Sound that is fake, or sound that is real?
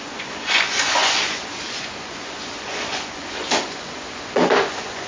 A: fake